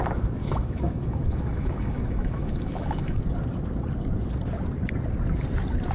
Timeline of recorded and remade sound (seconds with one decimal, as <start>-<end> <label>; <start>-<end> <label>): 0.0-0.4 recorded; 0.4-3.2 remade; 3.2-5.9 recorded